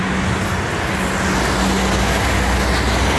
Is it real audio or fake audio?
real